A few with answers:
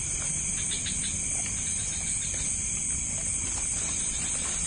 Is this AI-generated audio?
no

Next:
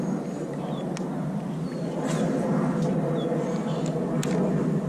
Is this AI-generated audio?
no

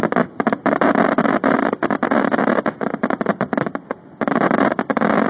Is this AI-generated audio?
no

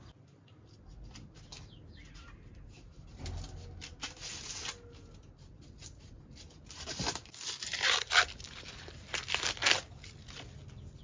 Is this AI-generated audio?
no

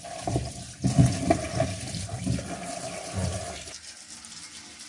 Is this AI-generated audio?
no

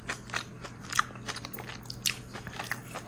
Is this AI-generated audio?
no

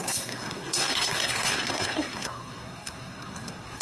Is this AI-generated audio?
yes